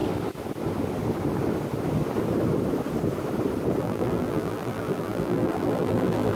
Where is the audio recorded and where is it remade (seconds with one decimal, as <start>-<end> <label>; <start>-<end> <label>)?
0.0-3.8 recorded; 3.8-6.4 remade